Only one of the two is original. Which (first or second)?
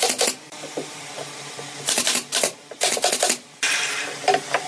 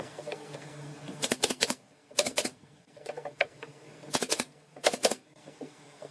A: first